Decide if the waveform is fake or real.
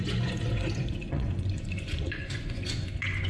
fake